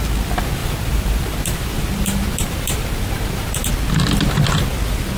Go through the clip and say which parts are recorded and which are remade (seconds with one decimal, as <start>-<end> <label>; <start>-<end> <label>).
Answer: 0.0-0.6 recorded; 0.6-3.7 remade; 3.7-5.2 recorded